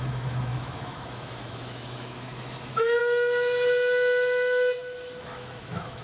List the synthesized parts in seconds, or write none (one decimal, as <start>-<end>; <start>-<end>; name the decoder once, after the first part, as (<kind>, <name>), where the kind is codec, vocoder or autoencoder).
0.0-3.0 (autoencoder, DAC-VAE); 5.2-6.0